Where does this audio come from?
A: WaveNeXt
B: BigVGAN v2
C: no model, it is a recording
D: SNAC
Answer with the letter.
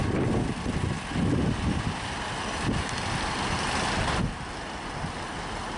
C